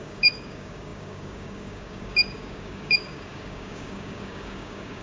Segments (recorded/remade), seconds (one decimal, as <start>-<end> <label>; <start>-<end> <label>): 0.0-5.0 remade